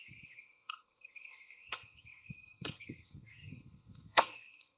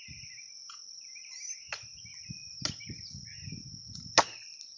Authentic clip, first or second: second